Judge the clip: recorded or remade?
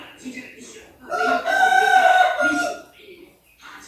recorded